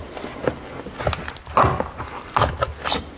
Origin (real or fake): real